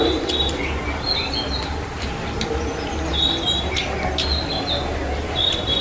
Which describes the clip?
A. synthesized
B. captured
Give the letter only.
B